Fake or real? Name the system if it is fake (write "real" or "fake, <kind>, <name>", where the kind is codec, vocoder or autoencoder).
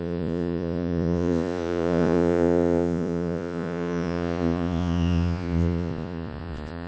fake, vocoder, Vocos